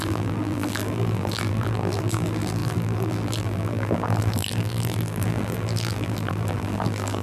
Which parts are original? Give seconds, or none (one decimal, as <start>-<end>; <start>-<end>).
none